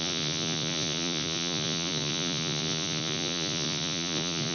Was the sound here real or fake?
fake